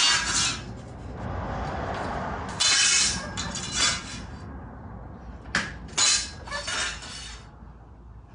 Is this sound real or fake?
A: real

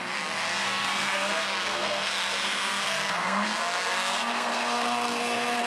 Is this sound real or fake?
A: fake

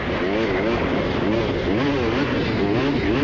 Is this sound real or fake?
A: real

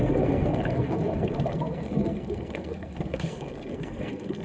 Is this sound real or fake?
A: fake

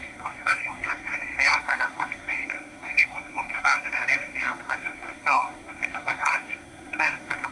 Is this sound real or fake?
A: fake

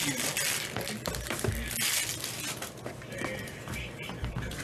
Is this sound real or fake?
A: real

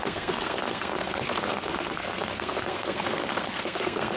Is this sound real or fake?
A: fake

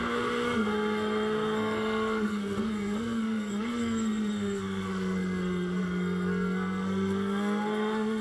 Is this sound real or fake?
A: fake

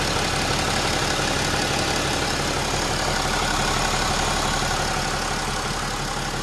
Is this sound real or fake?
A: real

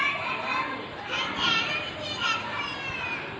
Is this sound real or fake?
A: real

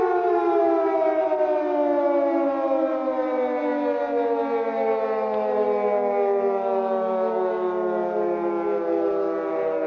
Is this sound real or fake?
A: real